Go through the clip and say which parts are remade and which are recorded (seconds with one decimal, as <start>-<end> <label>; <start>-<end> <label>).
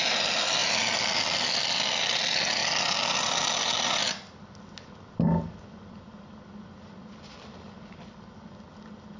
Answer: 0.0-0.6 recorded; 0.6-1.8 remade; 1.8-9.2 recorded